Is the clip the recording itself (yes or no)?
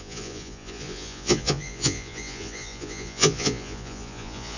no